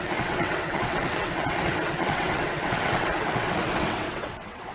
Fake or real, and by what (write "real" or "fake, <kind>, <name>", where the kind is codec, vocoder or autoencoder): fake, vocoder, WaveNeXt